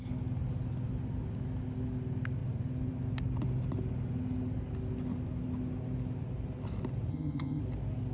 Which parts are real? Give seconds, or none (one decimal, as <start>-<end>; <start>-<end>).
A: 0.0-7.1; 7.6-8.1